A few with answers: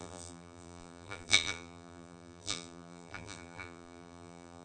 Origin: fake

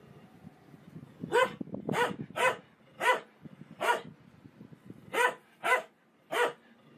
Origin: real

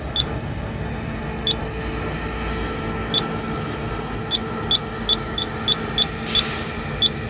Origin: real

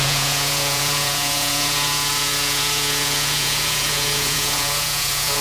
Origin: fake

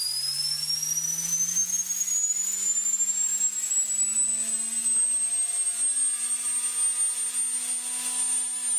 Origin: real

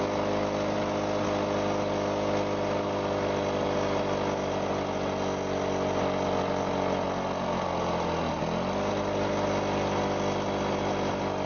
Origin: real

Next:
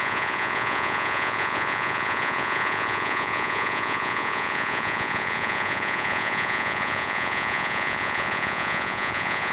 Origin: fake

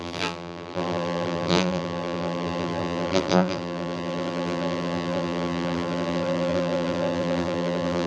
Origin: fake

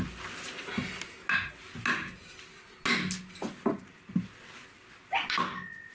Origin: real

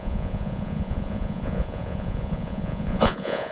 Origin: fake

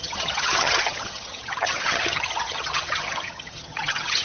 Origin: fake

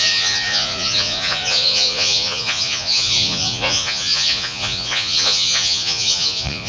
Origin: fake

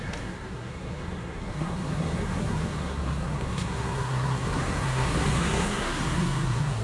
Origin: fake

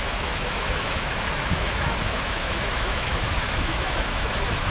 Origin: fake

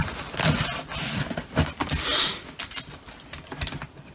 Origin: real